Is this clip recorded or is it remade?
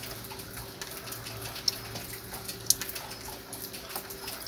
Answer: recorded